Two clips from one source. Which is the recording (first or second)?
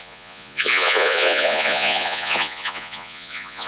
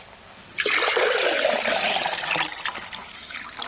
second